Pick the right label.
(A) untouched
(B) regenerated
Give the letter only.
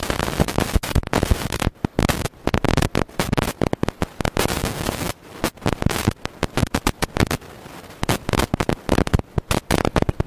A